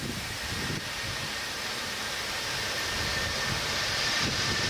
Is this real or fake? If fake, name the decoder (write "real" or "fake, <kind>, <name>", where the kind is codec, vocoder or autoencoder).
fake, vocoder, BigVGAN v2